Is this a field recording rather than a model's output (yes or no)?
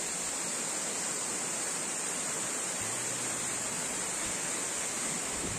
yes